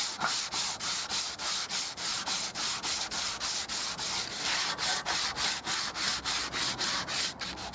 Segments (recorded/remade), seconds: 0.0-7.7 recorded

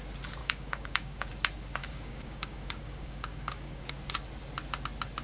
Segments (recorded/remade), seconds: 0.0-0.4 recorded; 0.4-1.3 remade; 1.3-1.8 recorded; 1.8-3.9 remade; 3.9-5.2 recorded

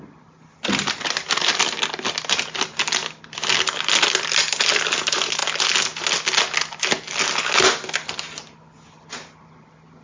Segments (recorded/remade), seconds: 0.0-10.0 recorded

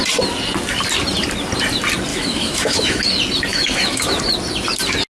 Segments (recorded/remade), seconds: 0.0-2.1 recorded; 2.1-3.0 remade; 3.0-3.5 recorded; 3.5-4.2 remade; 4.2-5.1 recorded